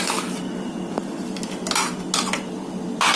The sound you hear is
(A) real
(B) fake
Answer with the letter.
A